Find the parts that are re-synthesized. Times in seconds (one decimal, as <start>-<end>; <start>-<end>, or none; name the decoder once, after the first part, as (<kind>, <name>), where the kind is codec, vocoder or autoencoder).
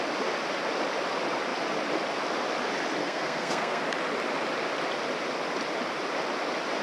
3.0-3.8 (codec, SNAC)